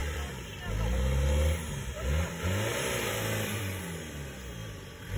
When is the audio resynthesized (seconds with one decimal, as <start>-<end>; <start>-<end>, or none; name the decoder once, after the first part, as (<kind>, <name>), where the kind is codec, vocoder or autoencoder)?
0.0-0.7 (vocoder, BigVGAN v2); 2.7-3.8; 4.6-5.2